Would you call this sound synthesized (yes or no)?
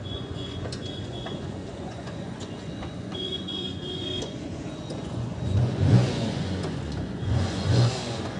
yes